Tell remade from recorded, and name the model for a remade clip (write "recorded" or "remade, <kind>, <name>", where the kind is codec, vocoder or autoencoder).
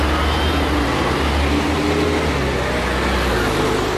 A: recorded